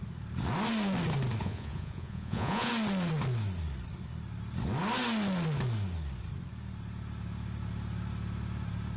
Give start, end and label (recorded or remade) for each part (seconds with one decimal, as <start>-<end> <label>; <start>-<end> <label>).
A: 0.0-1.4 recorded; 1.4-2.7 remade; 2.7-9.0 recorded